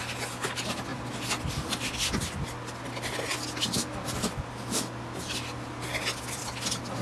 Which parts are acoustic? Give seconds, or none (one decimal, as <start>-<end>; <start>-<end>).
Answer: 0.0-7.0